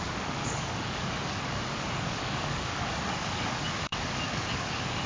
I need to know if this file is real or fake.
fake